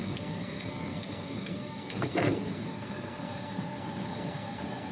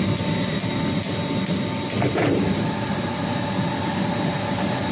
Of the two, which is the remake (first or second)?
first